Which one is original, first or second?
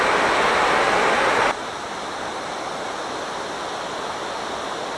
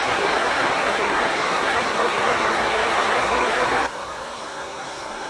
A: first